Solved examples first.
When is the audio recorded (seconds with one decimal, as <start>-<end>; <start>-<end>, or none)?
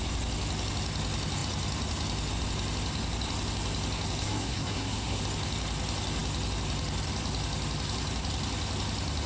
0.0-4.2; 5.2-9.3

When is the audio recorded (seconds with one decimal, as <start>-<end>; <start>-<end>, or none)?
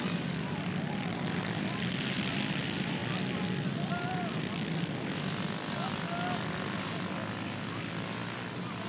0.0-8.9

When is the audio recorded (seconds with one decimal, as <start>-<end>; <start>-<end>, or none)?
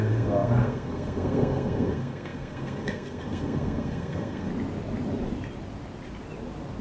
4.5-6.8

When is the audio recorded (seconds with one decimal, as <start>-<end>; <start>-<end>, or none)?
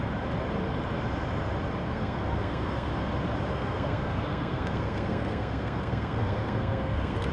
0.0-1.8; 2.9-3.5